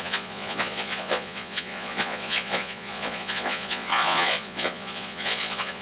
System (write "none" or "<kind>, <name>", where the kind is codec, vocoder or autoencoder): vocoder, Vocos